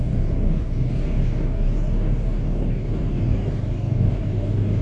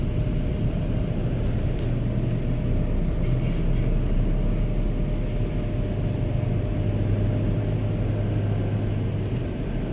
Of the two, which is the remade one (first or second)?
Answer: first